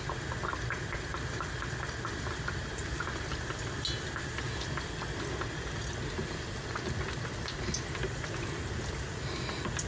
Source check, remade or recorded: recorded